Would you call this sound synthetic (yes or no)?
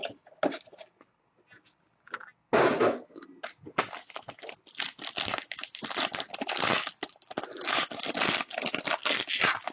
no